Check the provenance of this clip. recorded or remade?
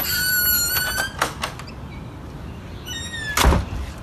recorded